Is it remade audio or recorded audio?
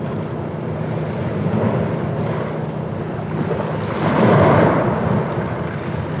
recorded